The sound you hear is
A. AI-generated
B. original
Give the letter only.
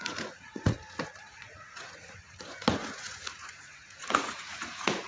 A